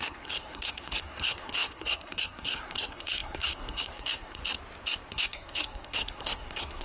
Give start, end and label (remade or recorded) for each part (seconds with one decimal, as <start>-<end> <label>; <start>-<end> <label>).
0.0-4.4 remade; 4.4-5.1 recorded; 5.1-6.8 remade